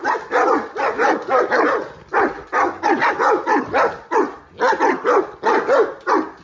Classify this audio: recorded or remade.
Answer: recorded